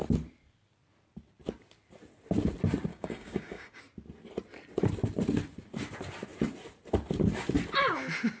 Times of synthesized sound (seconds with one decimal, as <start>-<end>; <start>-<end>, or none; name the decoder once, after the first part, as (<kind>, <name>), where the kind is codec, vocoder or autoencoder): 2.9-3.8 (codec, DAC)